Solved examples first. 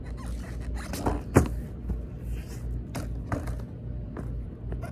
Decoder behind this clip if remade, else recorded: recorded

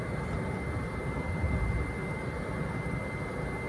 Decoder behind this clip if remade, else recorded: recorded